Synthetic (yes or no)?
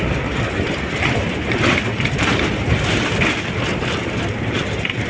yes